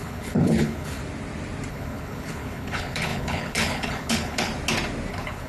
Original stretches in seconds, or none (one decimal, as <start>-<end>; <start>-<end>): 1.0-1.7; 4.5-5.1